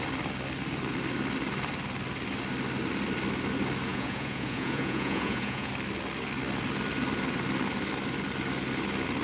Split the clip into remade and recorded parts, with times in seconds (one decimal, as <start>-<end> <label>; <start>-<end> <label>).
0.0-3.9 recorded; 3.9-5.7 remade; 5.7-9.2 recorded